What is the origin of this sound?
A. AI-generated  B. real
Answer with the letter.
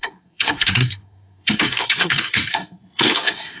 A